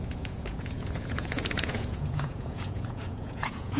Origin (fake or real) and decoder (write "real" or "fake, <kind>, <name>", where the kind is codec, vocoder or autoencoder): fake, vocoder, Vocos